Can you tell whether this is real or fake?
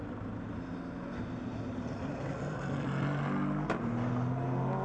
real